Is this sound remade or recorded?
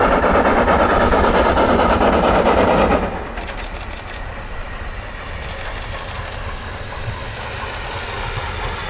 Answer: recorded